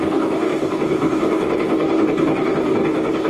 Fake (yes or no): yes